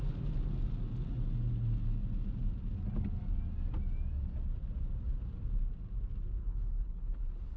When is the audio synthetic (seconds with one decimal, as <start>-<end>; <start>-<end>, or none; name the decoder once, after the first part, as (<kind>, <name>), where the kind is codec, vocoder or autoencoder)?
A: 6.4-7.6 (codec, HILCodec)